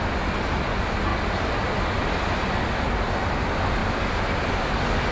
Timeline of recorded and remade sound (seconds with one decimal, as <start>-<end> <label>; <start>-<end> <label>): 0.0-1.1 recorded; 1.1-2.1 remade; 2.1-5.1 recorded